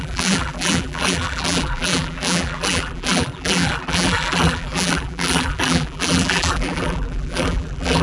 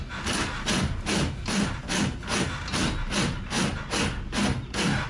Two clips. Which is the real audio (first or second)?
second